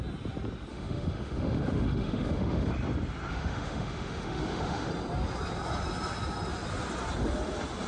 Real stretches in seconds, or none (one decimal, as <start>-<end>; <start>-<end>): 0.0-0.7; 2.7-3.3; 4.9-7.9